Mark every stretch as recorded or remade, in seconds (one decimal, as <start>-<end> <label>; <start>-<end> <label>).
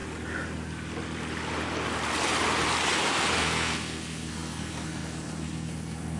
0.0-3.3 recorded; 3.3-6.2 remade